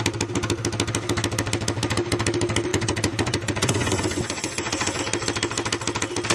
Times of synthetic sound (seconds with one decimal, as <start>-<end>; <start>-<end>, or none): 2.7-5.0